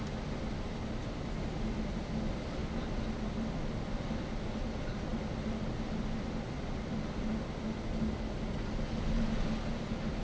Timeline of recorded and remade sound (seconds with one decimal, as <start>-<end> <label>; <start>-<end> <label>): 0.0-10.2 recorded